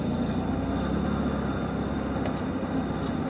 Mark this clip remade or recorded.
recorded